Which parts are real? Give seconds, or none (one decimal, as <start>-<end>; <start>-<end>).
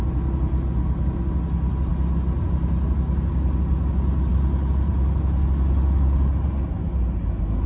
0.0-7.7